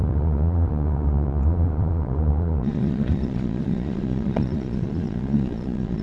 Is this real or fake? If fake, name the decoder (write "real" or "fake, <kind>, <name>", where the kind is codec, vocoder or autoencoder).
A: fake, vocoder, Vocos